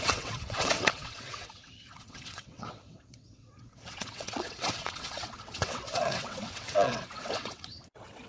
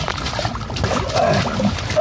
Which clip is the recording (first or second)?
second